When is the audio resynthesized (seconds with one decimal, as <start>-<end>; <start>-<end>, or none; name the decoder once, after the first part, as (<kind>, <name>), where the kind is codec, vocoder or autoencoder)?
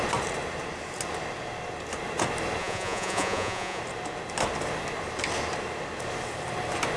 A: 2.6-3.8 (vocoder, Vocos)